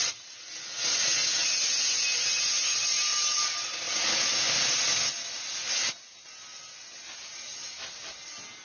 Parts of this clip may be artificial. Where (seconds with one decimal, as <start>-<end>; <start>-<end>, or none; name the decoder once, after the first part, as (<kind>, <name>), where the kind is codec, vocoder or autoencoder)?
0.0-0.5 (vocoder, WaveNeXt)